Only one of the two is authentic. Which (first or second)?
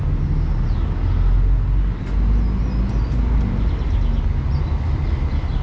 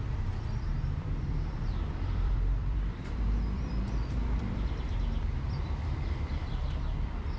first